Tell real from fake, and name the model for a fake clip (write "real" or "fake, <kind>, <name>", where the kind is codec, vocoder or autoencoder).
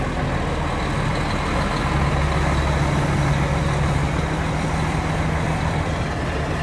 real